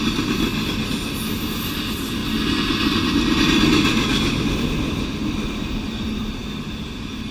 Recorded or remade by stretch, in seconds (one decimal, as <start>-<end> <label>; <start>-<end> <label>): 0.0-7.3 recorded

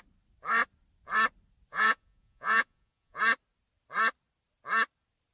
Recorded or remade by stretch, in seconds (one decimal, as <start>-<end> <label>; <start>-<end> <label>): 0.0-1.7 recorded; 1.7-3.2 remade; 3.2-5.3 recorded

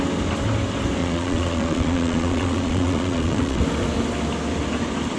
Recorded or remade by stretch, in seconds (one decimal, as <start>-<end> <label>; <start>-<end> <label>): 0.0-1.0 recorded; 1.0-3.6 remade; 3.6-5.2 recorded

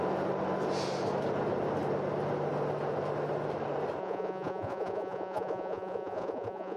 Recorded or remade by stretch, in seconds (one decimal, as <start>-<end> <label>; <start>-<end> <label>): 0.0-4.0 recorded; 4.0-6.8 remade

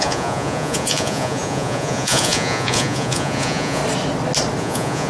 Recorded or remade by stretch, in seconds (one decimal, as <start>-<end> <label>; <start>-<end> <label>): 0.0-3.8 remade; 3.8-4.6 recorded; 4.6-5.1 remade